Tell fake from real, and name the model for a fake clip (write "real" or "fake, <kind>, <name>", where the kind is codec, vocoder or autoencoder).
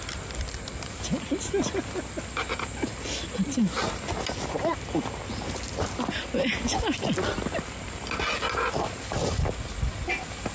real